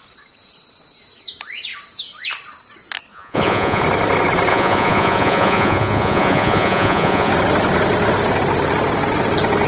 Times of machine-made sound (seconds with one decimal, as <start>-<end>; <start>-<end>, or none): 3.1-3.8; 4.5-7.3